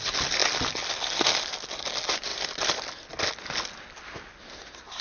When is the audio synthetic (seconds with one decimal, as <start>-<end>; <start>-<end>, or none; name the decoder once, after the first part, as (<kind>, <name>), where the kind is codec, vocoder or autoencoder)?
none